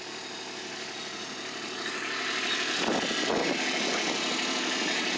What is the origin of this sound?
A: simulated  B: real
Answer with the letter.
B